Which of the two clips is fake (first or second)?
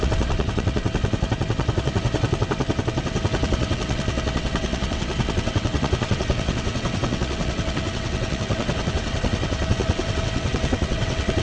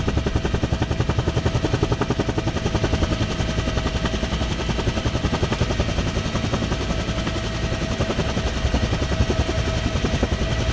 first